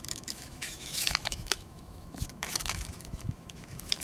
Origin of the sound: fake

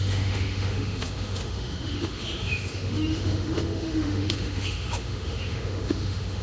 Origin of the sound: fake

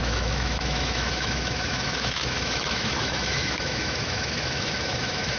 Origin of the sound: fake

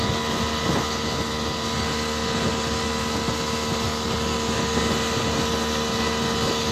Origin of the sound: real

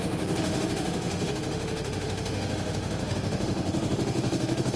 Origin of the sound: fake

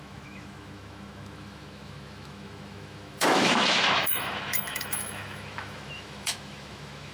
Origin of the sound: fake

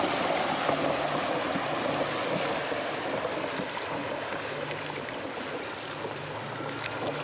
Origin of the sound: real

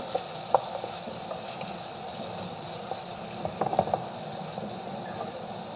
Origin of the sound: real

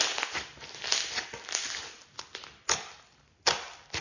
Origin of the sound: real